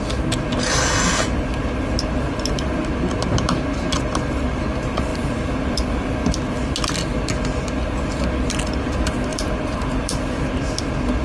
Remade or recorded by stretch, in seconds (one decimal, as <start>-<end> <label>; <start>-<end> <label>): 0.0-5.1 recorded; 5.1-6.1 remade; 6.1-9.3 recorded; 9.3-10.3 remade; 10.3-11.2 recorded